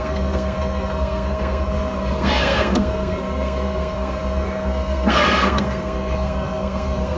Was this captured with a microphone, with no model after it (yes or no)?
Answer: no